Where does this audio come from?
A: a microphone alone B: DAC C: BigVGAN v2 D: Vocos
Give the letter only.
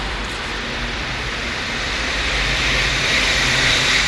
C